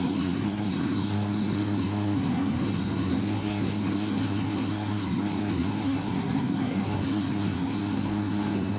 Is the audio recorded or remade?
remade